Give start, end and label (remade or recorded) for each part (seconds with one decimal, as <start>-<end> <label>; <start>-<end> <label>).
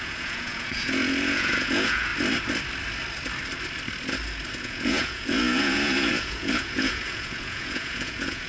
0.0-2.1 remade; 2.1-4.6 recorded; 4.6-8.5 remade